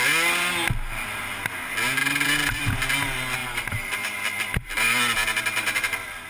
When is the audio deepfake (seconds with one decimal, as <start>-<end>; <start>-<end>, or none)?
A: 2.0-2.6; 3.4-6.3